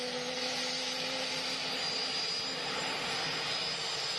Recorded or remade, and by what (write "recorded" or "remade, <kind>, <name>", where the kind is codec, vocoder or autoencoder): recorded